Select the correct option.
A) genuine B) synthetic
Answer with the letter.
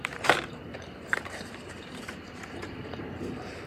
B